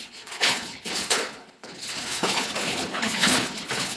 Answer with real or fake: fake